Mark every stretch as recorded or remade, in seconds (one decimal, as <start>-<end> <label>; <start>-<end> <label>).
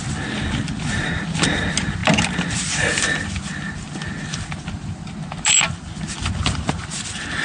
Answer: 0.0-7.4 recorded